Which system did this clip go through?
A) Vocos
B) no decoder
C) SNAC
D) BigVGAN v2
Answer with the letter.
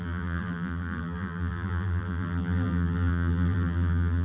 D